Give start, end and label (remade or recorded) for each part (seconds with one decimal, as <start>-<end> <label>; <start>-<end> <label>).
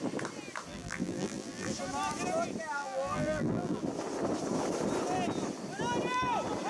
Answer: 0.0-0.7 recorded; 0.7-1.7 remade; 1.7-2.8 recorded; 2.8-3.8 remade; 3.8-6.7 recorded